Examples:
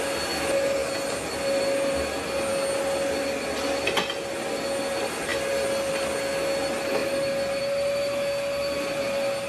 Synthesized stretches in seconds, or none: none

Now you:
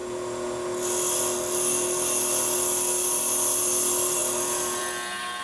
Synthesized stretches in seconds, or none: none